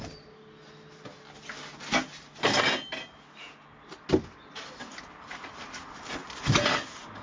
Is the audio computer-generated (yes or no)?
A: no